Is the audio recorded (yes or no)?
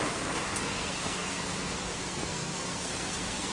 no